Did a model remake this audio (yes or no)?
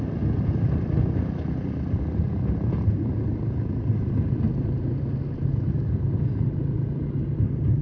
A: no